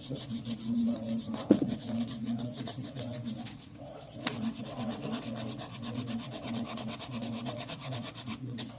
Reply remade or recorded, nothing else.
remade